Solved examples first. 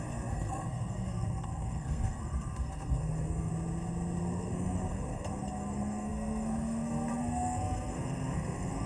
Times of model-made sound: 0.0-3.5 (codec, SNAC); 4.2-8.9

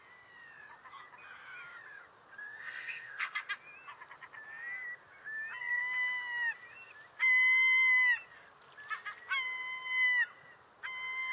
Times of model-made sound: 2.4-3.5 (codec, SNAC)

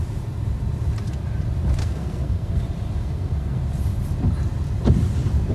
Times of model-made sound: 1.8-2.6 (codec, SNAC); 3.0-3.6

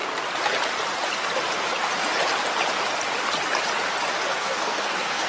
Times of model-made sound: 4.3-5.3 (codec, SNAC)

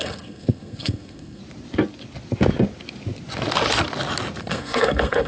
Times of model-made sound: 0.0-1.4 (codec, SNAC); 4.4-5.3